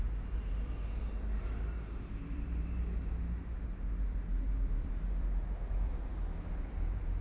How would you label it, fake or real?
fake